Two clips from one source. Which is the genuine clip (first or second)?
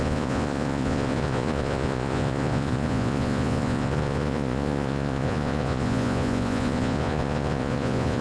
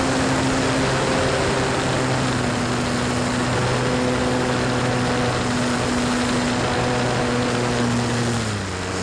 second